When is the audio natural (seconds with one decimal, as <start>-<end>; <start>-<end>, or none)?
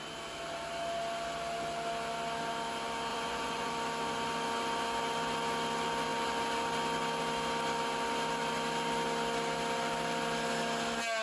0.0-3.1; 3.7-11.2